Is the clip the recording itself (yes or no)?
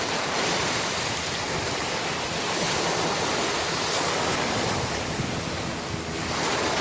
yes